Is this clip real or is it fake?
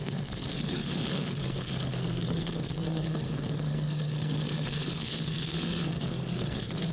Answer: fake